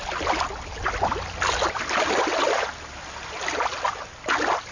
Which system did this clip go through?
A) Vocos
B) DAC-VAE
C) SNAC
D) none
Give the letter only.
D